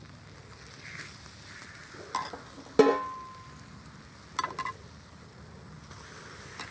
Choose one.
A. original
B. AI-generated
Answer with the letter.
A